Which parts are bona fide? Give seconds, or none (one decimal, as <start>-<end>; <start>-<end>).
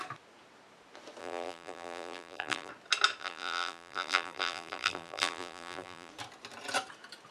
0.0-1.2; 2.7-3.2; 6.1-7.3